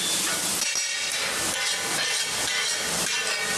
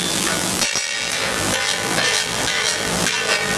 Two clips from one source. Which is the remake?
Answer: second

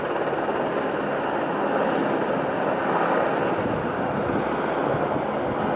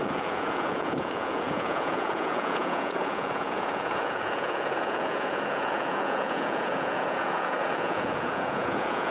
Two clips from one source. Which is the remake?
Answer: second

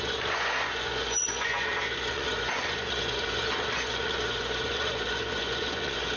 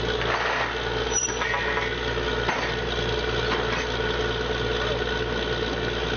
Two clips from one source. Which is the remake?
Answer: first